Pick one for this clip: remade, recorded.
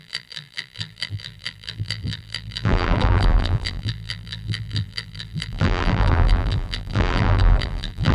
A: remade